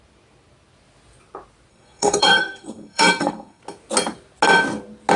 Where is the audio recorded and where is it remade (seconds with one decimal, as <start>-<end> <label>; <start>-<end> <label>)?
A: 0.0-1.7 recorded; 1.7-3.6 remade; 3.6-5.2 recorded